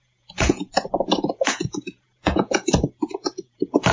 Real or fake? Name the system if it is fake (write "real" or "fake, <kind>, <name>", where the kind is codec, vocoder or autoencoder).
fake, vocoder, Vocos